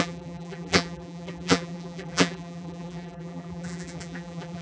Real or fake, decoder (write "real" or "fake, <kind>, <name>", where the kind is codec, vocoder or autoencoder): fake, vocoder, BigVGAN v2